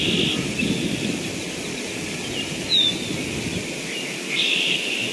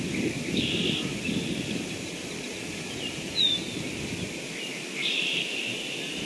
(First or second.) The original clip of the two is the first